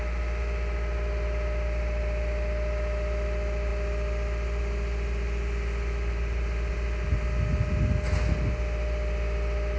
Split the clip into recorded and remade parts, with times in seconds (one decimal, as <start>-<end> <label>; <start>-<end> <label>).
0.0-9.8 recorded